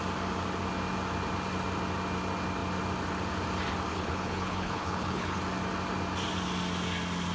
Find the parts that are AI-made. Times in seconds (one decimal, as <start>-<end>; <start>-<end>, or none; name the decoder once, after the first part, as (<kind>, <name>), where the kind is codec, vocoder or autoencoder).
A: 3.9-5.4 (codec, HILCodec)